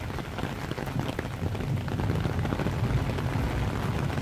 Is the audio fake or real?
real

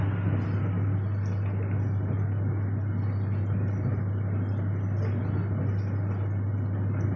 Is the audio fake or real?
real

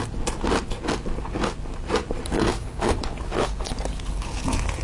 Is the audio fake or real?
real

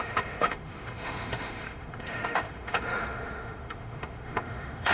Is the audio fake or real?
fake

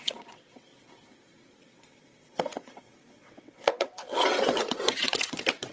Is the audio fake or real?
fake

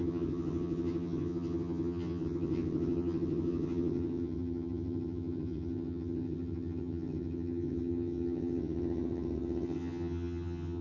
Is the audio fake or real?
fake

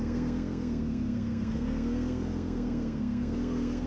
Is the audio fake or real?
fake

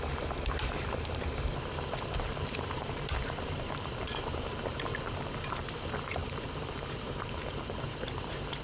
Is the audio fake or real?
fake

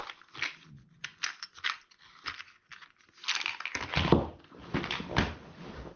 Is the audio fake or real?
real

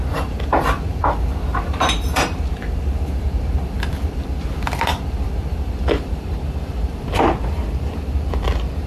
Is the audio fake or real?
fake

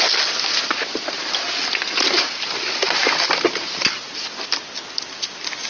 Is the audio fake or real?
real